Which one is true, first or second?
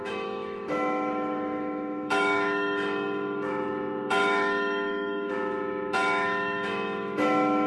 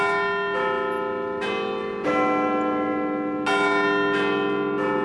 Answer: second